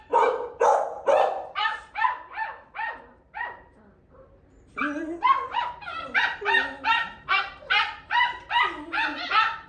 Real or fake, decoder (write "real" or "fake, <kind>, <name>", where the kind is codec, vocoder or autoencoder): fake, vocoder, BigVGAN v2